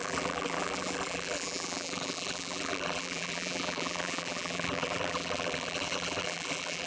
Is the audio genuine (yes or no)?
no